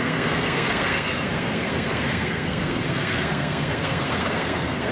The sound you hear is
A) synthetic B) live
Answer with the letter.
A